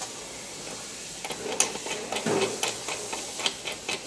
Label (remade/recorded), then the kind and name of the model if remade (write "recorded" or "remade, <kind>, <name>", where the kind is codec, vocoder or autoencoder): recorded